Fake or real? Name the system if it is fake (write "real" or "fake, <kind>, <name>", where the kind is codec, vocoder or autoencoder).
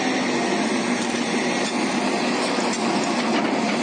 real